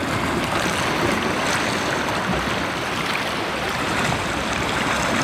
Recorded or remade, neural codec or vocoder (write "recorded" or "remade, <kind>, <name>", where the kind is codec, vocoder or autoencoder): recorded